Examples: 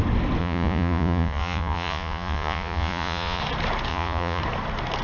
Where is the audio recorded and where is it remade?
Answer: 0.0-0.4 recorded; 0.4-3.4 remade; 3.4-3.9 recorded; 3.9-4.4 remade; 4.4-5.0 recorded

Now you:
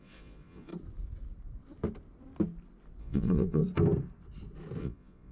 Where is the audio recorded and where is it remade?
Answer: 0.0-0.7 remade; 0.7-3.0 recorded; 3.0-3.6 remade; 3.6-4.8 recorded; 4.8-5.3 remade

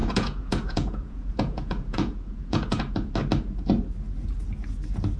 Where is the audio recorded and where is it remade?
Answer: 0.0-3.1 remade; 3.1-5.2 recorded